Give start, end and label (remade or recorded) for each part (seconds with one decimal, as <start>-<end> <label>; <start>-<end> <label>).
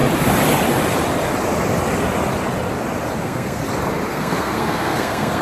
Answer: 0.0-3.2 recorded; 3.2-3.6 remade; 3.6-4.1 recorded; 4.1-5.4 remade